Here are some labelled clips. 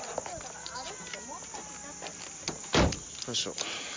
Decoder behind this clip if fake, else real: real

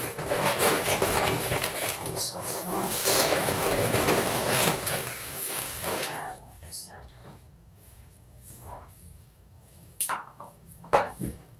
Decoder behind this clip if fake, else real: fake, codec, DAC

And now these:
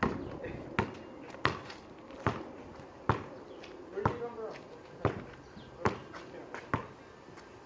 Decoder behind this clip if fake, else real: real